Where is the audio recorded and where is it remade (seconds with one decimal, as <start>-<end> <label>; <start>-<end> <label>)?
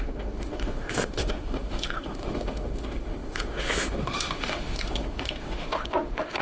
0.0-6.4 remade